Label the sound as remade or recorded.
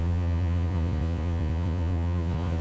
remade